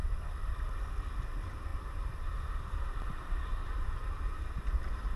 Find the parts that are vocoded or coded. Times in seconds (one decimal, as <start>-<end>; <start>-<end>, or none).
1.1-5.2